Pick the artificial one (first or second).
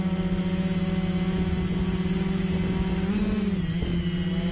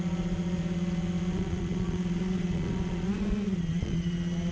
second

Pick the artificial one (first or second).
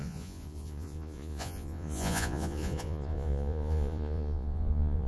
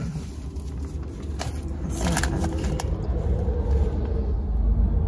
first